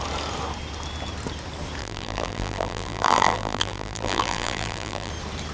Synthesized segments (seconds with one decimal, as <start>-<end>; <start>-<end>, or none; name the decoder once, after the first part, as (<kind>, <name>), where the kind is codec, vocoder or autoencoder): 1.8-5.1 (vocoder, BigVGAN v2)